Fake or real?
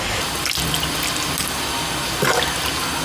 real